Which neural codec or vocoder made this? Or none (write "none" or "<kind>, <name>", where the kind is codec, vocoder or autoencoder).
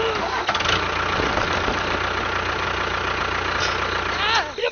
none